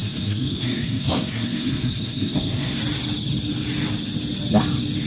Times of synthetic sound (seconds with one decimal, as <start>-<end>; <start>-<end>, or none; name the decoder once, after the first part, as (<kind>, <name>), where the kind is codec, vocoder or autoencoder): 0.0-2.8 (codec, SNAC)